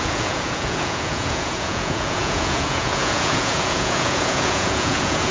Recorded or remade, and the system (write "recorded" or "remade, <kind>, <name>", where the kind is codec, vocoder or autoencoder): remade, vocoder, Vocos